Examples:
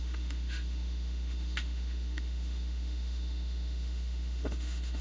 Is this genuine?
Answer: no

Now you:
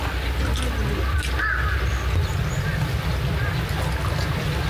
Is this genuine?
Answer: yes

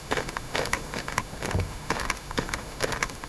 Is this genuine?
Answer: no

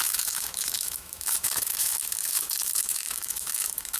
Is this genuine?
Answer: no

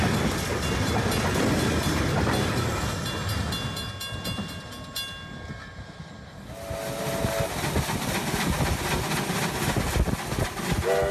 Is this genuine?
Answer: yes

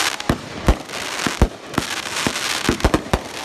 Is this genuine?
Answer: yes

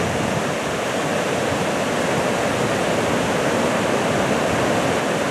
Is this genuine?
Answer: yes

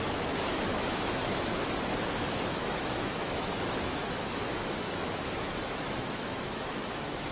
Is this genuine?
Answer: no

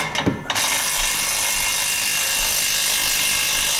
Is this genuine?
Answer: yes